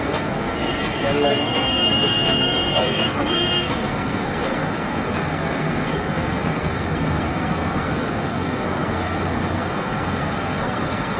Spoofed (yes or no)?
yes